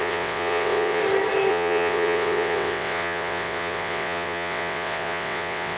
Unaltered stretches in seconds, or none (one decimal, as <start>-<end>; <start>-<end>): 1.0-1.5